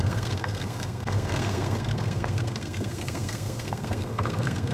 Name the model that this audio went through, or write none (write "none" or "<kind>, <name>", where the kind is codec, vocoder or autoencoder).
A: codec, SNAC